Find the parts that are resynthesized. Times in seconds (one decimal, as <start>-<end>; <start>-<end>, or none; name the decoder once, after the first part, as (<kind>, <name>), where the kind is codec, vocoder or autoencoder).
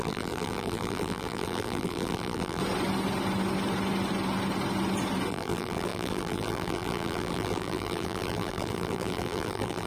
0.0-2.6 (vocoder, BigVGAN v2); 5.3-9.9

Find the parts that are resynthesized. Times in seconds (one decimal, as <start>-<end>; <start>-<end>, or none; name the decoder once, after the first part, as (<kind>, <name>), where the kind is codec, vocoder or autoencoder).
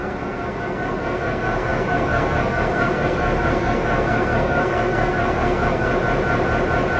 0.0-5.9 (codec, SNAC)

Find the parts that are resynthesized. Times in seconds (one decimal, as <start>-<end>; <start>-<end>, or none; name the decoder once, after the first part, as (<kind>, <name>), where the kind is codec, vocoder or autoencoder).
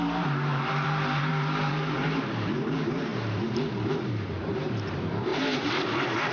0.0-3.1 (vocoder, BigVGAN v2); 3.7-6.3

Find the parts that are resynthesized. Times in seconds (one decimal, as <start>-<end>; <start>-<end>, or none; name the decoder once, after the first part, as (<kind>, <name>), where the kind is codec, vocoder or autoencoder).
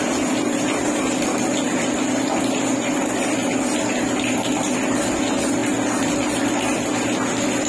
none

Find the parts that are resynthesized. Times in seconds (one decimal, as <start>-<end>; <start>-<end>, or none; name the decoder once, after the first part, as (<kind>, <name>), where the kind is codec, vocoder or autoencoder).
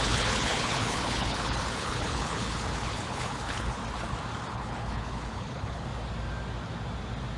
0.0-3.8 (codec, HILCodec); 4.5-5.9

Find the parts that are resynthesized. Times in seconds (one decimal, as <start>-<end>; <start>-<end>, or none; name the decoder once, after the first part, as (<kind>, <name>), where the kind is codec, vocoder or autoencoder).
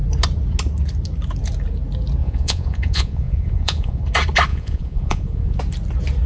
2.2-4.0 (vocoder, Vocos); 4.5-5.6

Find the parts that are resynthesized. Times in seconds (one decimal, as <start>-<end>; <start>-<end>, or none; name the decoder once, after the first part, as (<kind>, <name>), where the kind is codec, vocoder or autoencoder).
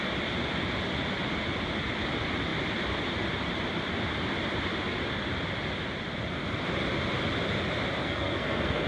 8.0-8.9 (codec, SNAC)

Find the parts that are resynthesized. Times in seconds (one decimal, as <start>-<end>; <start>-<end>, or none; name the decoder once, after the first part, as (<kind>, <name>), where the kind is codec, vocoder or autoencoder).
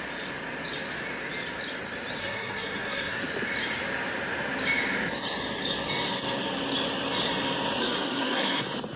2.2-3.2 (codec, SNAC); 7.8-8.6